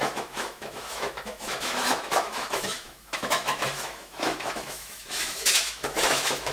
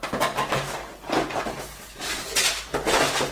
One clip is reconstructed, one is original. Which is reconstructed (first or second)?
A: first